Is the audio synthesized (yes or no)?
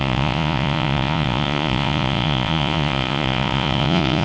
yes